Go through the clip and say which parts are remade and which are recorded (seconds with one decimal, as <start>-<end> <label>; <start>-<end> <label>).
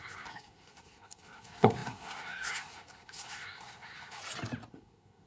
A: 0.0-4.2 remade; 4.2-4.7 recorded; 4.7-5.3 remade